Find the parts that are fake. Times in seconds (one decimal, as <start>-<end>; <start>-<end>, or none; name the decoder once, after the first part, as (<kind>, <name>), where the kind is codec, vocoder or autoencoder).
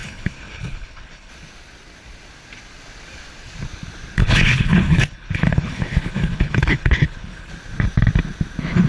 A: 0.0-1.3 (codec, HILCodec); 4.2-7.5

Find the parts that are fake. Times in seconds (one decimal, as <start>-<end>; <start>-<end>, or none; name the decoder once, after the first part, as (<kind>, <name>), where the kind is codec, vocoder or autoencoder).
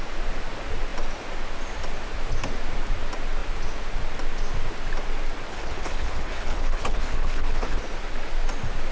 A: 5.5-7.8 (codec, HILCodec)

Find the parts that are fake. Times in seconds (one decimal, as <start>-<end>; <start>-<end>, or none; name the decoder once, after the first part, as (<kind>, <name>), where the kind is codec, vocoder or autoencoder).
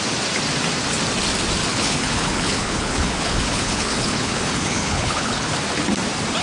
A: 1.7-5.5 (codec, HILCodec)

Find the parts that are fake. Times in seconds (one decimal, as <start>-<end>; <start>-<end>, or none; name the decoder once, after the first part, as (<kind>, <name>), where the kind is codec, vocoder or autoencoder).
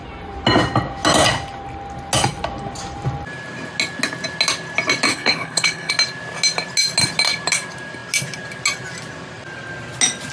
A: 5.1-5.9 (codec, HILCodec)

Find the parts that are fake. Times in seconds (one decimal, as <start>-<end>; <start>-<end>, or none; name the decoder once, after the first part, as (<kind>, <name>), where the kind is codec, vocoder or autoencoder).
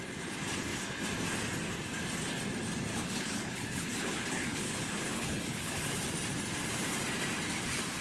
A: 2.9-5.9 (codec, HILCodec)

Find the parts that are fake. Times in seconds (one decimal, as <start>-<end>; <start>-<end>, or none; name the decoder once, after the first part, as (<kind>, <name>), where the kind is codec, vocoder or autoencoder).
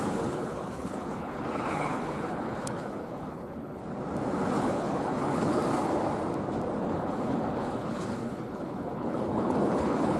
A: 0.0-3.8 (codec, HILCodec); 4.6-5.6; 6.8-10.2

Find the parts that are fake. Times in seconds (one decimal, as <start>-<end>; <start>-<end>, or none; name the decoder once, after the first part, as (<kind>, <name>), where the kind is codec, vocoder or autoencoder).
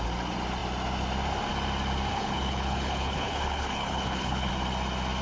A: 2.1-4.5 (codec, HILCodec)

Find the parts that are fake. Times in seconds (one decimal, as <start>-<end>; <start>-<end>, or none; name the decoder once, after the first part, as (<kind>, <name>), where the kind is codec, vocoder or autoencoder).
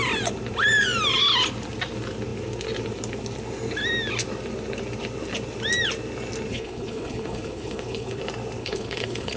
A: 6.5-8.2 (codec, HILCodec); 8.6-9.4